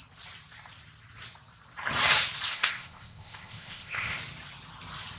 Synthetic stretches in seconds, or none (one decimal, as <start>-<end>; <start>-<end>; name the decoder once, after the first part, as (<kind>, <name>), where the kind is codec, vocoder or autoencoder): 2.5-4.2 (codec, ZipCodec)